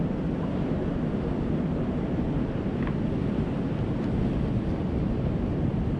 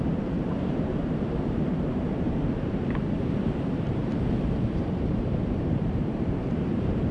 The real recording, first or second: first